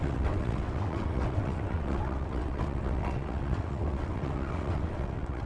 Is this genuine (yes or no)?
no